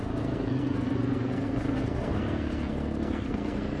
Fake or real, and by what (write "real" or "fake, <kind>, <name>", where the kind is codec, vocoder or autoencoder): fake, codec, SNAC